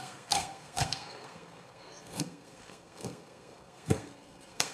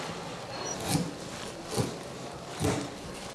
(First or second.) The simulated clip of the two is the first